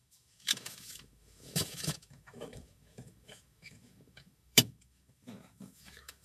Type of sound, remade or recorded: remade